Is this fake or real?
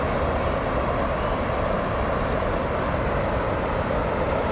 real